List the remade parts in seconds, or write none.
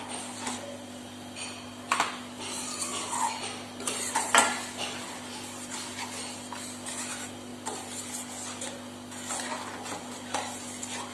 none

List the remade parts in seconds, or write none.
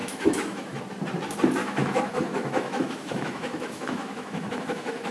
0.0-0.8 (autoencoder, DAC-VAE); 1.6-5.1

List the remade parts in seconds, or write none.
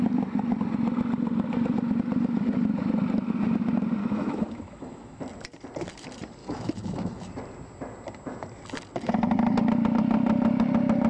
4.0-5.2 (autoencoder, DAC-VAE); 6.4-7.3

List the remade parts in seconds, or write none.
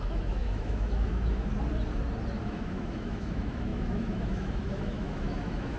0.0-1.5 (autoencoder, DAC-VAE); 2.4-5.8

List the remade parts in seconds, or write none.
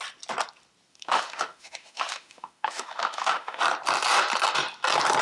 0.9-3.6 (autoencoder, DAC-VAE)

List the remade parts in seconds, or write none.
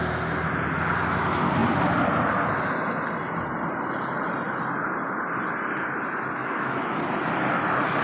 6.4-7.0 (autoencoder, DAC-VAE)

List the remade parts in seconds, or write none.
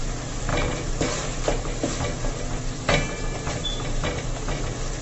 none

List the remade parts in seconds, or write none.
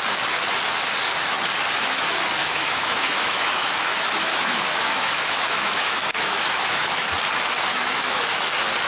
2.4-6.9 (autoencoder, DAC-VAE); 7.7-8.4